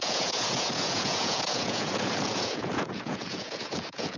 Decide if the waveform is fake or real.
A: fake